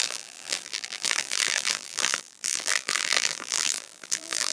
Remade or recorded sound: remade